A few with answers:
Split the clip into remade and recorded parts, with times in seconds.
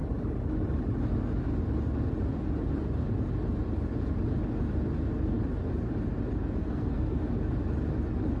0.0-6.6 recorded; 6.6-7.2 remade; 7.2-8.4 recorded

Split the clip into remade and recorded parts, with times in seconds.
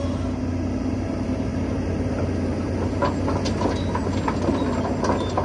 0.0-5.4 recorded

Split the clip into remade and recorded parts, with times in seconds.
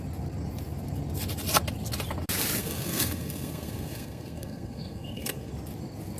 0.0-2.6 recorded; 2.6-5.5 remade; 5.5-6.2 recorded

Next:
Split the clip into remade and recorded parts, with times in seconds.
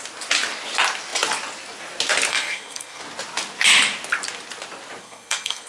0.0-2.3 recorded; 2.3-3.0 remade; 3.0-5.0 recorded; 5.0-5.7 remade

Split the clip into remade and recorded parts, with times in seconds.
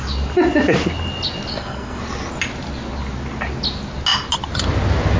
0.0-1.5 recorded; 1.5-2.0 remade; 2.0-5.2 recorded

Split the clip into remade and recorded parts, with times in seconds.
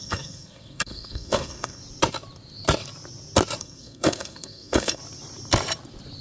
0.0-1.8 remade; 1.8-3.6 recorded; 3.6-5.0 remade; 5.0-6.2 recorded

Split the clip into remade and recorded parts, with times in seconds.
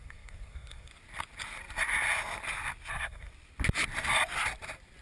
0.0-0.9 remade; 0.9-2.9 recorded; 2.9-3.3 remade; 3.3-5.0 recorded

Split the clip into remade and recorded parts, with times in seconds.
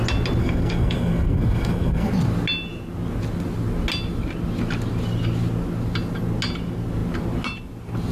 0.0-0.4 recorded; 0.4-2.1 remade; 2.1-8.1 recorded